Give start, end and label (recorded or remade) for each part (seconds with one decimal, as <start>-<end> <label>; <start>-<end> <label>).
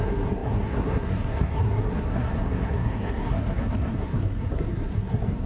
0.0-5.5 remade